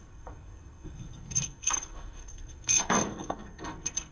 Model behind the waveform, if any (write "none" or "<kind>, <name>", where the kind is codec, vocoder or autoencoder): codec, SNAC